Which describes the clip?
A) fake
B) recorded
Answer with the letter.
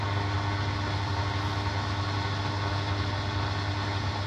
B